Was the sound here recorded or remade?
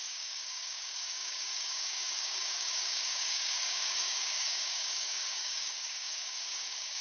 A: remade